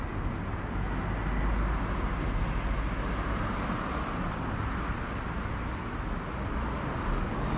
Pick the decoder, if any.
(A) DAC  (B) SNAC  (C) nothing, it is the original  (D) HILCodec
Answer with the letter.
C